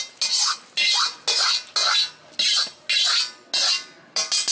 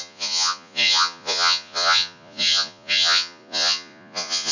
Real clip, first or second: first